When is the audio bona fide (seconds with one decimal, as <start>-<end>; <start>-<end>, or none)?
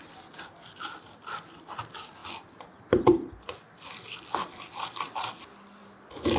0.0-2.2; 3.3-6.4